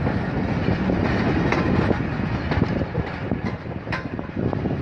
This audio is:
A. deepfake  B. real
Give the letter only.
B